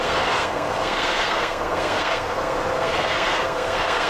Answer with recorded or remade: remade